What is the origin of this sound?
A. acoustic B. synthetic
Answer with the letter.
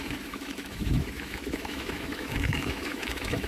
B